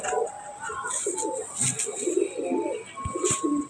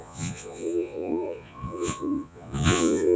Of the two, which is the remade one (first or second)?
second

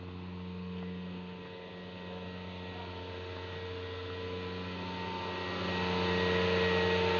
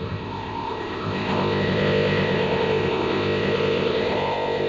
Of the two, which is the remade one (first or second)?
second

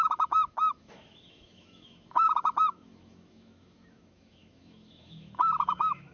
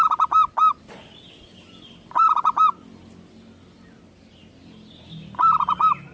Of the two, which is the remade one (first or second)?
first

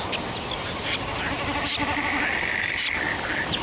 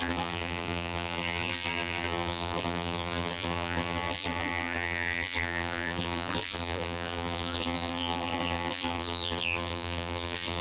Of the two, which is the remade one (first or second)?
second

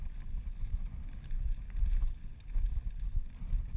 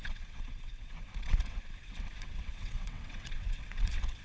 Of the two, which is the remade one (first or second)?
second